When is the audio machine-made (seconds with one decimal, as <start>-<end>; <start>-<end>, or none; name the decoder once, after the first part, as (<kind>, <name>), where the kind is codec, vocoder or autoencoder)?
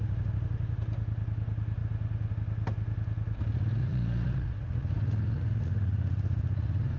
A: 3.8-7.0 (vocoder, Vocos)